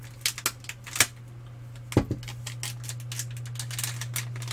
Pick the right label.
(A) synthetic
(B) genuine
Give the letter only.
B